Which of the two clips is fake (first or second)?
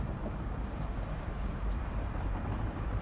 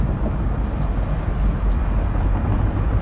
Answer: first